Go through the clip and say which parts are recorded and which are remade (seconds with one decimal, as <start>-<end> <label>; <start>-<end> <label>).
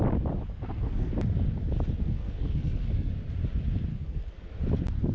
0.0-0.5 recorded; 0.5-1.1 remade; 1.1-2.0 recorded; 2.0-3.1 remade; 3.1-3.9 recorded; 3.9-4.5 remade; 4.5-5.1 recorded